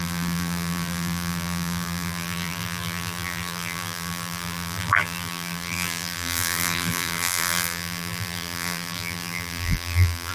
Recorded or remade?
remade